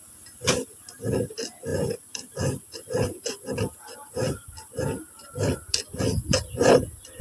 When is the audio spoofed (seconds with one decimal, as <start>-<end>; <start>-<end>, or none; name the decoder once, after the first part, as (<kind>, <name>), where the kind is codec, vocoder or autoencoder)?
1.7-6.0 (vocoder, BigVGAN v2)